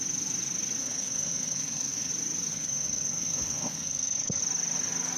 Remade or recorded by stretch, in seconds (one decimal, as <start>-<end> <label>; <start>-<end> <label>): 0.0-0.8 recorded; 0.8-2.1 remade; 2.1-2.5 recorded; 2.5-4.4 remade; 4.4-5.2 recorded

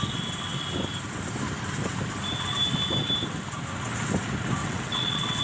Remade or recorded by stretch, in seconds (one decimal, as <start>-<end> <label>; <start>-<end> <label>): 0.0-4.6 recorded; 4.6-5.4 remade

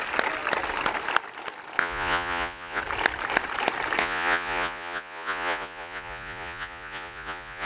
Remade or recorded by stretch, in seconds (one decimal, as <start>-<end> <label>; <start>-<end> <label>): 0.0-1.8 recorded; 1.8-2.8 remade; 2.8-4.0 recorded; 4.0-7.7 remade

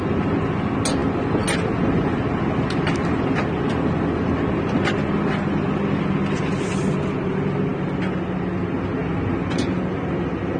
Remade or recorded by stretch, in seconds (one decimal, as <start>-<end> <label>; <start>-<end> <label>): 0.0-10.6 recorded

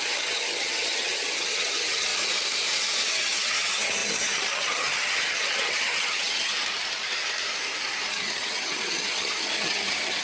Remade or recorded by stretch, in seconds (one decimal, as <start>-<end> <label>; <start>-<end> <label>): 0.0-2.1 remade; 2.1-3.1 recorded; 3.1-6.5 remade; 6.5-8.1 recorded; 8.1-10.2 remade

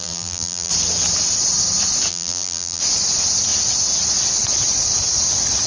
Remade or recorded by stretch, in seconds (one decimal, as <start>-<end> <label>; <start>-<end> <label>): 0.0-0.7 remade; 0.7-2.1 recorded; 2.1-2.8 remade; 2.8-5.7 recorded